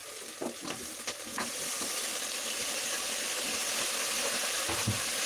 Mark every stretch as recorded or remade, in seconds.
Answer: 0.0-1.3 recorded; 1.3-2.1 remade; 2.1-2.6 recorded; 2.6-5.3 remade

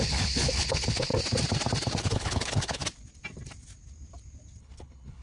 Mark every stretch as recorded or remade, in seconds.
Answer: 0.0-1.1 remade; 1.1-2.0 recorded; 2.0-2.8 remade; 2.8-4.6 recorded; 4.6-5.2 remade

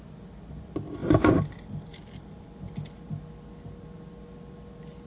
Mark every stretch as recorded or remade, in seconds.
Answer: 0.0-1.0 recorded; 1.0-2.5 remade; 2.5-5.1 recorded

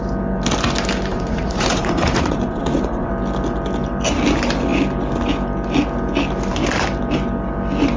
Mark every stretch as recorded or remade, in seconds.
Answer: 0.0-1.1 recorded; 1.1-3.1 remade; 3.1-8.0 recorded

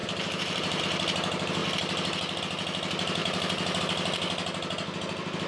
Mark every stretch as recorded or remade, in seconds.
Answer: 0.0-0.8 remade; 0.8-3.2 recorded; 3.2-3.8 remade; 3.8-5.5 recorded

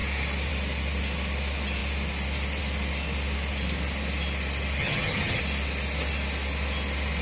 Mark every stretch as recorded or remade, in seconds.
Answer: 0.0-4.8 recorded; 4.8-5.4 remade; 5.4-7.2 recorded

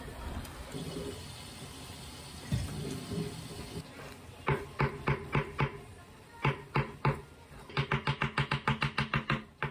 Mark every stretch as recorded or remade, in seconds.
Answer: 0.0-9.7 recorded

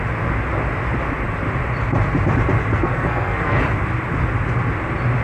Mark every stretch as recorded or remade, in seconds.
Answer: 0.0-2.7 recorded; 2.7-3.6 remade; 3.6-5.2 recorded